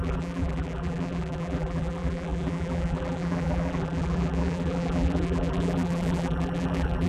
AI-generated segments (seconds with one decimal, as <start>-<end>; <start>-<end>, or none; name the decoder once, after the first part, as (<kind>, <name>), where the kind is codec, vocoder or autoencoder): 0.0-7.1 (vocoder, BigVGAN v2)

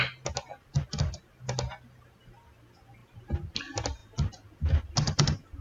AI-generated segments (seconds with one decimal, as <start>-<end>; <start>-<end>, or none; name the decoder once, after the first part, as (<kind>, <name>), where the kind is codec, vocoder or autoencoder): 3.0-3.5 (vocoder, BigVGAN v2)